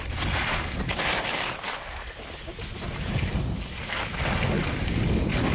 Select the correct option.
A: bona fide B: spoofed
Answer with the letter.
A